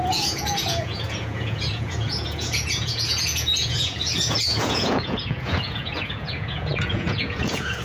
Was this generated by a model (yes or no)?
yes